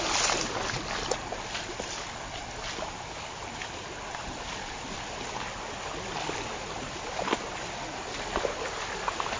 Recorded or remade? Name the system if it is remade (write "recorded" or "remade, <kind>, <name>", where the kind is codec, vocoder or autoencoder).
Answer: recorded